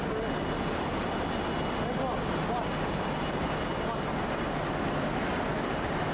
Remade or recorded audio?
recorded